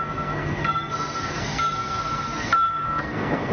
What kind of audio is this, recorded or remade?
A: remade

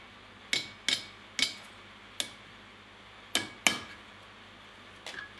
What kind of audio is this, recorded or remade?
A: recorded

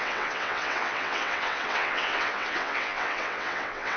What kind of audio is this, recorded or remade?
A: remade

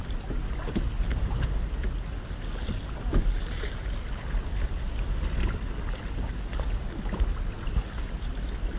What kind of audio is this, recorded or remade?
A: recorded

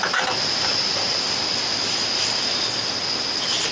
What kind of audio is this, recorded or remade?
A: recorded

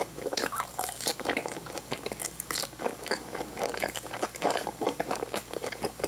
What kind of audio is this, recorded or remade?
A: remade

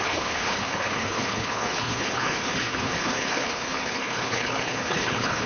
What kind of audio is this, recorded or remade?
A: remade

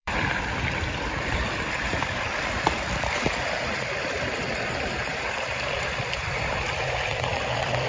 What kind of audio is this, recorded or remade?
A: remade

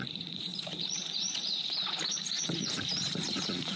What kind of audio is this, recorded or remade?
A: remade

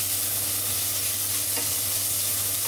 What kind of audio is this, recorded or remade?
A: recorded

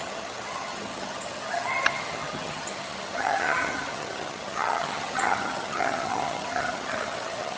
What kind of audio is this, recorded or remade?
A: remade